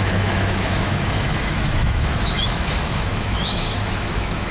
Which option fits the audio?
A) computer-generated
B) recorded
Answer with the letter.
A